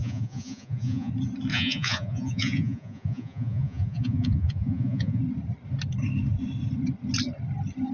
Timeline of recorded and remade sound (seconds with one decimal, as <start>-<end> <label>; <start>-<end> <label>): 0.0-1.1 remade; 1.1-1.5 recorded; 1.5-5.2 remade; 5.2-7.9 recorded

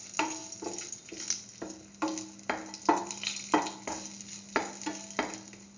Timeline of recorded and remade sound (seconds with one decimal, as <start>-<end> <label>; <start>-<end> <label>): 0.0-5.8 recorded

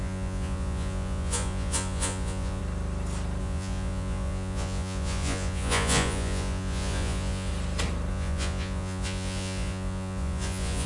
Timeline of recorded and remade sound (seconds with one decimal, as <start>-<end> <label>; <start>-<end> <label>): 0.0-2.6 remade; 2.6-3.4 recorded; 3.4-7.5 remade; 7.5-8.1 recorded; 8.1-10.9 remade